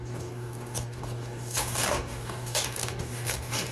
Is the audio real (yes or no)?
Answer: no